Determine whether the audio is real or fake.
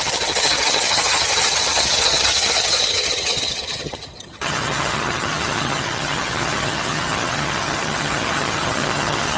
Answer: fake